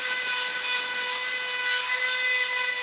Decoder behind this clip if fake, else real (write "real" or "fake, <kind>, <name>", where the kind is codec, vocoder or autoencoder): real